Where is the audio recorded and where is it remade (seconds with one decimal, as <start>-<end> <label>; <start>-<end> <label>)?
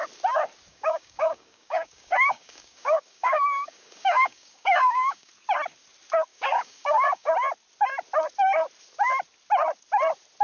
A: 0.0-0.7 recorded; 0.7-5.3 remade; 5.3-6.3 recorded; 6.3-7.3 remade; 7.3-10.4 recorded